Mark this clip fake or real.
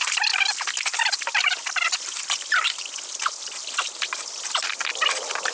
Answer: real